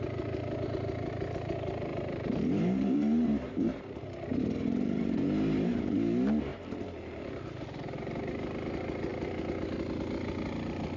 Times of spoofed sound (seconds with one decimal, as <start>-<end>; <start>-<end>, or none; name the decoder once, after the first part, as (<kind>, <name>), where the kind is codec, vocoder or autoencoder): 1.9-3.8 (vocoder, BigVGAN v2); 4.3-5.8